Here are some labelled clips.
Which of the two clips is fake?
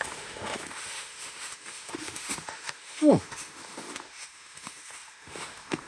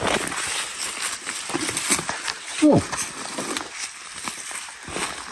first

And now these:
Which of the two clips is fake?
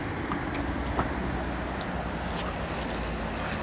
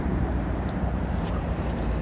second